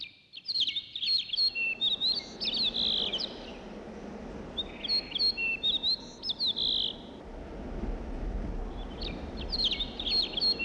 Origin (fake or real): real